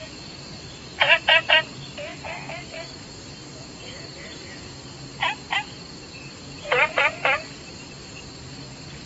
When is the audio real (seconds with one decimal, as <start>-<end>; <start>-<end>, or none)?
1.5-9.1